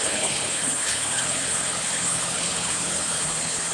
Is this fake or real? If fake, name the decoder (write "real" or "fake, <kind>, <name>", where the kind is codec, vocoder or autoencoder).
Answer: fake, codec, HILCodec